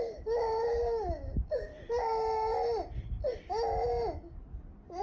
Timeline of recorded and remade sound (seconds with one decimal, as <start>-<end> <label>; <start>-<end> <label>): 0.0-1.7 remade; 1.7-5.0 recorded